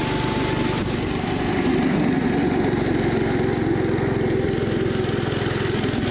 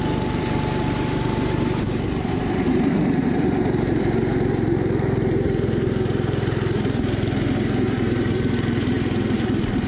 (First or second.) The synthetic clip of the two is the second